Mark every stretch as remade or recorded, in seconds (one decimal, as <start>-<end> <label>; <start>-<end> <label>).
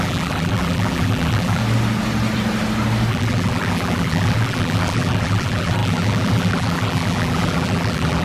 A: 0.0-1.6 remade; 1.6-3.1 recorded; 3.1-8.2 remade